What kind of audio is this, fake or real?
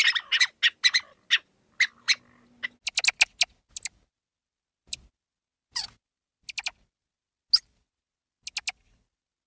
real